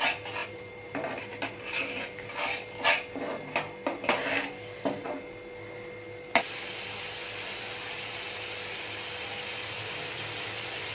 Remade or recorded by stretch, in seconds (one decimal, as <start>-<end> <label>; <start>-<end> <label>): 0.0-0.4 recorded; 0.4-1.6 remade; 1.6-10.9 recorded